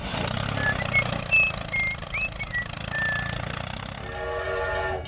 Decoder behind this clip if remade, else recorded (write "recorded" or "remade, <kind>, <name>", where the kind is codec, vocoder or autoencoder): recorded